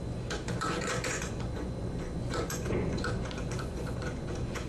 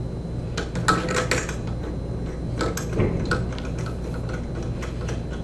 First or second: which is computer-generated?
first